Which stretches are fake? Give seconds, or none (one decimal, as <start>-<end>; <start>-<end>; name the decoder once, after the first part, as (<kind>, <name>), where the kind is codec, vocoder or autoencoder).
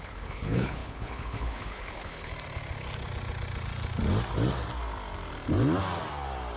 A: 0.0-2.3 (codec, HILCodec)